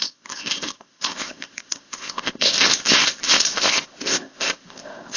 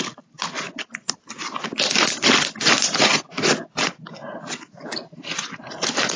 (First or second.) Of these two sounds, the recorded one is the second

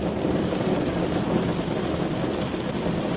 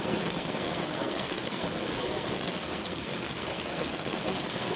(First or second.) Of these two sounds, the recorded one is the first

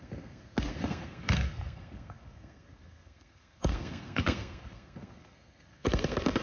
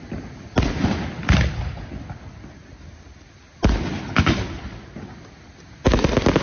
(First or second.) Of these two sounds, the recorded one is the second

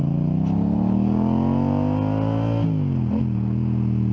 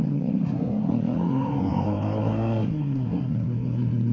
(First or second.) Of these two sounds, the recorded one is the first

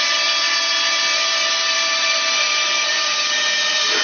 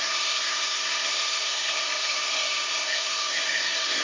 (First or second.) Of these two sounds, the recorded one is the first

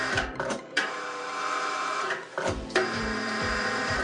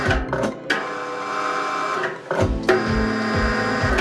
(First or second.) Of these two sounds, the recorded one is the second